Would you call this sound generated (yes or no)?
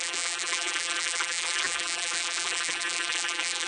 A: yes